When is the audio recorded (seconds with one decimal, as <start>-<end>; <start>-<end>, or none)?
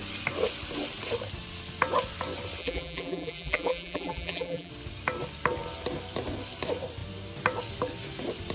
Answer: 0.0-2.6; 4.7-8.5